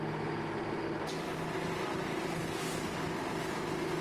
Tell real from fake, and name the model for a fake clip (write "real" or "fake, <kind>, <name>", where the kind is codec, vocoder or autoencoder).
real